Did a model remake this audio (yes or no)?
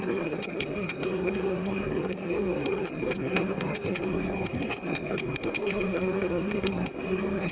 yes